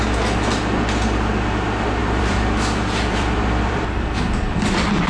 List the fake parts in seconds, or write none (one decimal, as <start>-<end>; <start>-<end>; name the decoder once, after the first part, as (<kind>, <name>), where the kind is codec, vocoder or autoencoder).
2.0-5.1 (vocoder, BigVGAN v2)